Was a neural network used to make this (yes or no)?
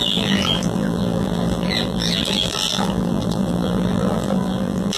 yes